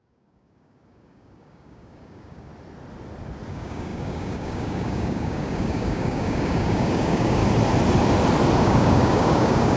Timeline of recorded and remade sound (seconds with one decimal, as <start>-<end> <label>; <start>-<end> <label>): 0.0-2.5 remade; 2.5-3.5 recorded; 3.5-7.4 remade; 7.4-8.6 recorded; 8.6-9.8 remade